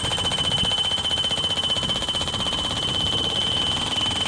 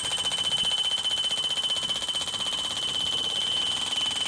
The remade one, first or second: first